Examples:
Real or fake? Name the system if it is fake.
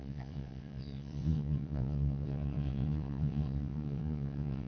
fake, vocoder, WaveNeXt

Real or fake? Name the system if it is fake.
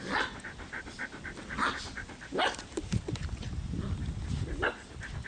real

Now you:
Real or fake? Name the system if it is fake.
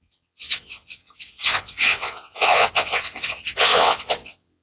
fake, vocoder, WaveNeXt